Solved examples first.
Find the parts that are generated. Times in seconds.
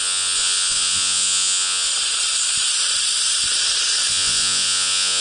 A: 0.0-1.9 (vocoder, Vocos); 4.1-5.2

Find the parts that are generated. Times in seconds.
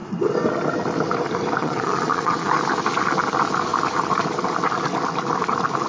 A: 1.6-2.5 (vocoder, Vocos)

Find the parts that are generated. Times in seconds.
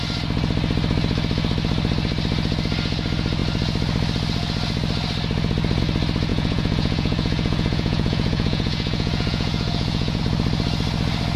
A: 6.3-10.2 (vocoder, Vocos)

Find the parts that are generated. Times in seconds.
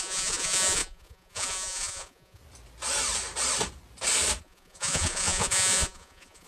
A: 0.0-2.4 (vocoder, Vocos); 4.4-6.5